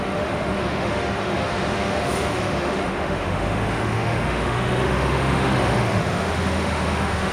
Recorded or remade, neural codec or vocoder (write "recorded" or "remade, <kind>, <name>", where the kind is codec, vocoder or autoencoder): remade, autoencoder, DAC-VAE